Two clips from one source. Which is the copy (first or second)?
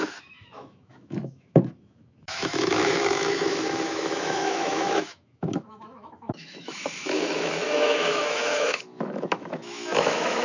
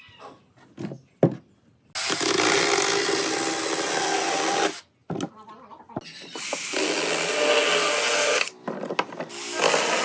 first